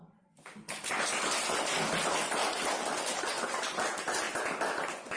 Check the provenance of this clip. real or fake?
real